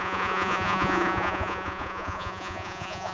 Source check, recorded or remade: remade